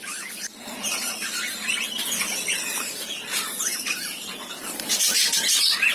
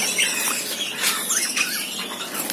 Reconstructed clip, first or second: first